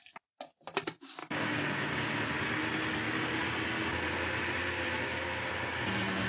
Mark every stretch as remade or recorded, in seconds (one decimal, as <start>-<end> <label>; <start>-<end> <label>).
0.0-6.3 recorded